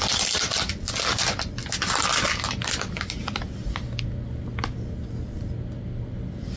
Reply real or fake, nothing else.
real